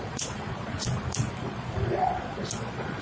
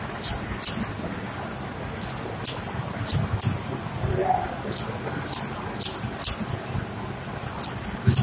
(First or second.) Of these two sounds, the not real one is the first